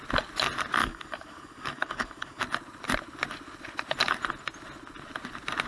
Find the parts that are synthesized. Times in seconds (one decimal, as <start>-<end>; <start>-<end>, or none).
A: 0.8-2.4